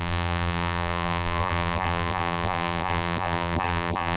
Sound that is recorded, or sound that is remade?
remade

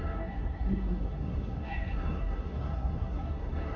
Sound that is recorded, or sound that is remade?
remade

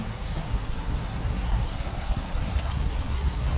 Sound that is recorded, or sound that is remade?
remade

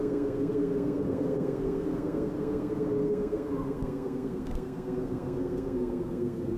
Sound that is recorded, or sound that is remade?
remade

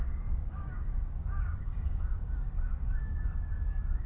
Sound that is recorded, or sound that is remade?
remade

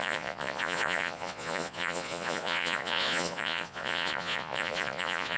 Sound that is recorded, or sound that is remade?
remade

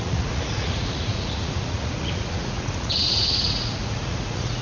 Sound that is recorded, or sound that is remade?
remade